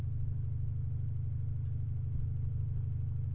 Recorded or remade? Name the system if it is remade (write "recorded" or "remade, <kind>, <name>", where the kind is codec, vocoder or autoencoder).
recorded